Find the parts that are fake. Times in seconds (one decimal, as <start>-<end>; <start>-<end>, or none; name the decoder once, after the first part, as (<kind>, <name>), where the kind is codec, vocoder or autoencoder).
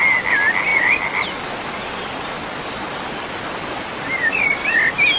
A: none